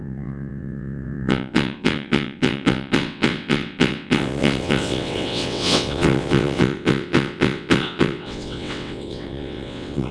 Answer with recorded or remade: remade